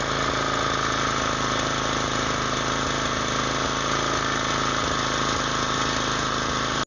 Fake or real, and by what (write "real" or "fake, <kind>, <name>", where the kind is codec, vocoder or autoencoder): real